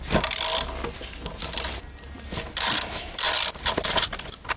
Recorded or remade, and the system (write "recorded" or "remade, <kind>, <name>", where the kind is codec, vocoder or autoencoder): recorded